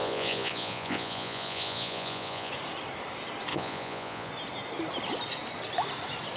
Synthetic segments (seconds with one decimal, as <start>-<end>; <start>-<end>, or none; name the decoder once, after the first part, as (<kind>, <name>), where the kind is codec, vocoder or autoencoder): 0.0-2.5 (vocoder, Vocos); 3.5-4.3